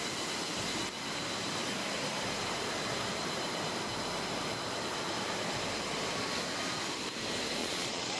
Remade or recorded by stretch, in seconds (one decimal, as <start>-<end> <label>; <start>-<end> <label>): 0.0-7.6 recorded; 7.6-8.2 remade